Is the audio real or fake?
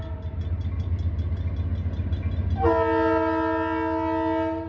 real